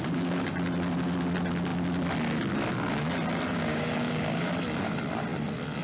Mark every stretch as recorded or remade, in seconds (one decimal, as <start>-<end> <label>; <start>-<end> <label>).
0.0-3.7 recorded; 3.7-4.5 remade; 4.5-5.8 recorded